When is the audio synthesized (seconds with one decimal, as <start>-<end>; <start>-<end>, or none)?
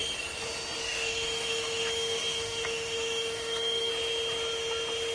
0.8-3.9